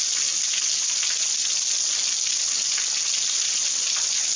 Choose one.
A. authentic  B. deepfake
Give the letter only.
A